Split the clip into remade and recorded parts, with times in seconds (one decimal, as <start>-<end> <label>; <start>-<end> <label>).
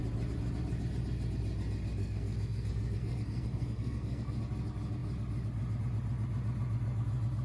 0.0-2.0 recorded; 2.0-4.4 remade; 4.4-7.4 recorded